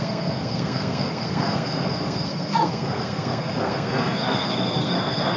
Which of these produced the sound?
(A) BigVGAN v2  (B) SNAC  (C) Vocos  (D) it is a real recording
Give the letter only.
B